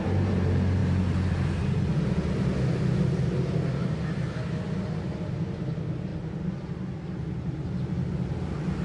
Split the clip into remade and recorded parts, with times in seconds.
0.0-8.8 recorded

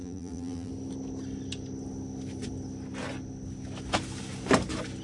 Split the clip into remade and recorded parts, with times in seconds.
0.0-0.7 remade; 0.7-5.0 recorded

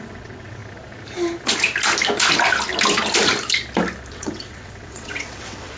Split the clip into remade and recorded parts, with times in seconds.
0.0-0.6 remade; 0.6-4.1 recorded; 4.1-5.8 remade

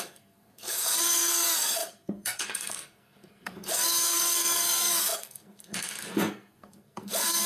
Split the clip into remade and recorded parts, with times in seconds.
0.0-7.5 remade

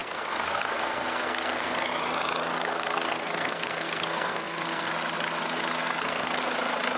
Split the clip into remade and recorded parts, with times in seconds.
0.0-1.9 remade; 1.9-2.5 recorded; 2.5-4.9 remade; 4.9-5.8 recorded; 5.8-6.4 remade; 6.4-7.0 recorded

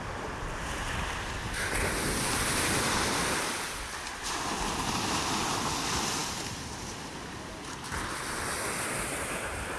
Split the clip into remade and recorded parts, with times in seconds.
0.0-9.8 recorded

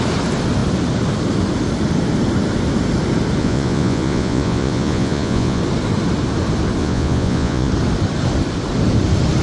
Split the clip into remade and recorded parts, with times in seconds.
0.0-3.4 recorded; 3.4-5.6 remade; 5.6-6.8 recorded; 6.8-7.7 remade; 7.7-9.4 recorded

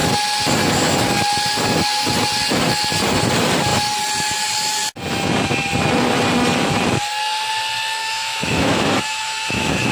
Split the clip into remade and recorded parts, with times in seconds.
0.0-8.0 recorded; 8.0-9.9 remade